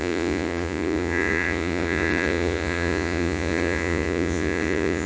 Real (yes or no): no